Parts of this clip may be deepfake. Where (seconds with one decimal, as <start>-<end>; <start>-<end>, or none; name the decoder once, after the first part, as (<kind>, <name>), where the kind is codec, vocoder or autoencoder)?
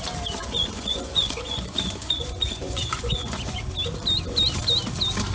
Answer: 0.4-3.6 (vocoder, Vocos)